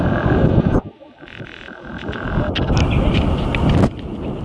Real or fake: real